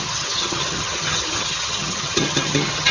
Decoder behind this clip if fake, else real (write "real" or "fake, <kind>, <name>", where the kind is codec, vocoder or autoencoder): fake, vocoder, HiFi-GAN